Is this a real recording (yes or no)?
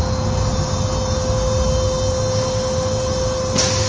yes